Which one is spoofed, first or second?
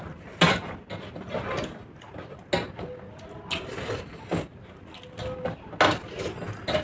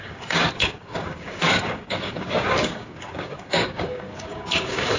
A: second